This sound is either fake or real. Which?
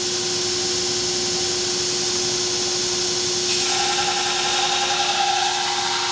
real